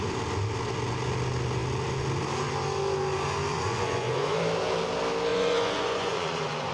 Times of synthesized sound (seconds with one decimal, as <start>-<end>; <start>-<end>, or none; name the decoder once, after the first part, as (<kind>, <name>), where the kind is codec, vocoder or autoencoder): 3.5-4.4 (vocoder, Vocos); 5.3-6.7